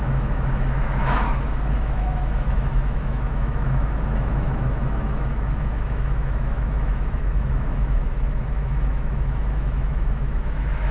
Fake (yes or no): yes